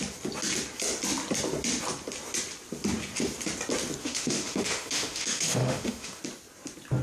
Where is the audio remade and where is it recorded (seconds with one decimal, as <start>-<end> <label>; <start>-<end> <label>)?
0.0-4.0 recorded; 4.0-6.2 remade; 6.2-7.0 recorded